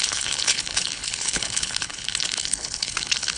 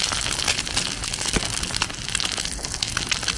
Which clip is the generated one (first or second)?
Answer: first